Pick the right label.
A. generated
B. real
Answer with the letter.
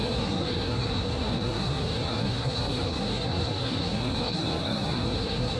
A